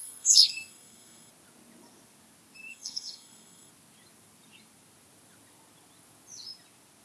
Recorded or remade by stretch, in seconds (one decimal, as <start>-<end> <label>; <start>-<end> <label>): 0.0-1.3 remade; 1.3-2.7 recorded; 2.7-3.7 remade; 3.7-7.0 recorded